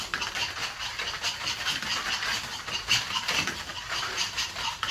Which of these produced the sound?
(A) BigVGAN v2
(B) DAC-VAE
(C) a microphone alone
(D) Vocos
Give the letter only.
A